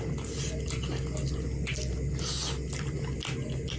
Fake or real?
real